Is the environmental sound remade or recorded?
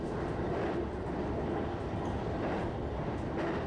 recorded